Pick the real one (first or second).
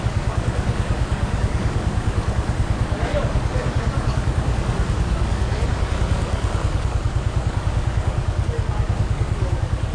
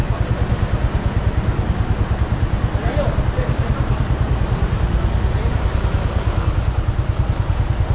second